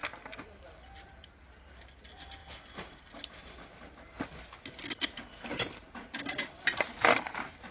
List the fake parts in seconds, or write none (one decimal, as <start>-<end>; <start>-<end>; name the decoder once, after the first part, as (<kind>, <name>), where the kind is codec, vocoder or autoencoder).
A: none

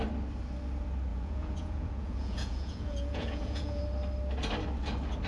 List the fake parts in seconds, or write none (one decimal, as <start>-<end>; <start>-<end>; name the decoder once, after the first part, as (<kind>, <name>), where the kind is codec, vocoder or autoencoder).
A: 1.1-3.8 (vocoder, Vocos)

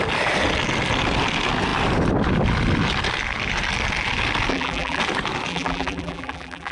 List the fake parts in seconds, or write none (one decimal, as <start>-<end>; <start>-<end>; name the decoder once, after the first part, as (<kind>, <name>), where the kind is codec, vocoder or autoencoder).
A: 4.5-5.0 (vocoder, BigVGAN v2); 5.5-6.7

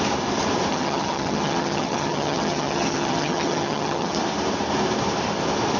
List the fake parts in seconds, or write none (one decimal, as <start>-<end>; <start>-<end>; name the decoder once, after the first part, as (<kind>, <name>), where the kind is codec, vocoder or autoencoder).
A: 0.7-4.2 (vocoder, HiFi-GAN)